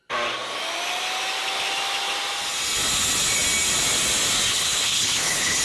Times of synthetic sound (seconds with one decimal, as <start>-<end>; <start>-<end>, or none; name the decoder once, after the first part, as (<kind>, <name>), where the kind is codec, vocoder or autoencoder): 4.5-5.6 (codec, HILCodec)